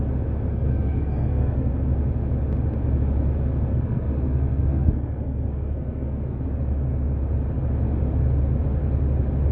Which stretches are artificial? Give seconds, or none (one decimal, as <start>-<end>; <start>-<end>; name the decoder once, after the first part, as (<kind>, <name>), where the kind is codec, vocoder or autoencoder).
0.5-1.7 (codec, SNAC); 3.7-6.4